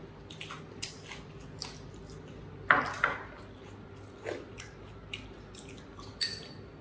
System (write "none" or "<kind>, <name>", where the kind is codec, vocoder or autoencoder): none